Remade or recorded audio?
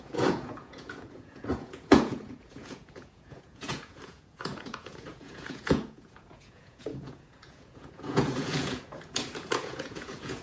remade